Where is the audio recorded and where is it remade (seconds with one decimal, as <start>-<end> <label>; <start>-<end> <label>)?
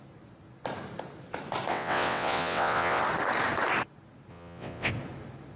0.0-1.7 recorded; 1.7-3.0 remade; 3.0-4.3 recorded; 4.3-4.9 remade; 4.9-5.6 recorded